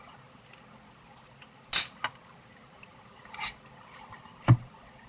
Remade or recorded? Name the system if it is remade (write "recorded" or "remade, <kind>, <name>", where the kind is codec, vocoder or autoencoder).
recorded